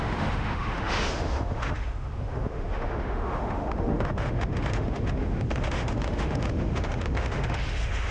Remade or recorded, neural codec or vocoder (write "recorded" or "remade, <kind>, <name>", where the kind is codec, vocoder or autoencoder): remade, autoencoder, DAC-VAE